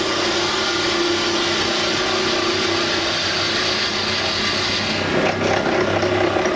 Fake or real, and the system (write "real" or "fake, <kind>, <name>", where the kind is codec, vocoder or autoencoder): real